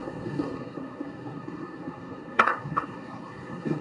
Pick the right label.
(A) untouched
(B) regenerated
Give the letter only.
B